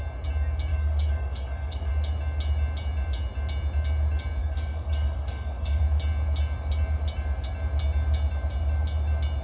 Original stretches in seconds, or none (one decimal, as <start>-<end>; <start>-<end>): 0.0-0.7; 1.9-4.4; 5.8-9.4